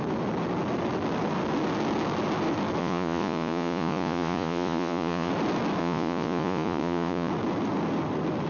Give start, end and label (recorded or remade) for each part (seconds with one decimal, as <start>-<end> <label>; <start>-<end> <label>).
0.0-2.8 recorded; 2.8-5.3 remade; 5.3-5.8 recorded; 5.8-7.3 remade; 7.3-8.5 recorded

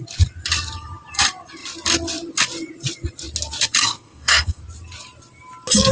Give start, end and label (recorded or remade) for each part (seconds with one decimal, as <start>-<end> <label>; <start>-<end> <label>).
0.0-3.8 recorded; 3.8-4.6 remade; 4.6-5.9 recorded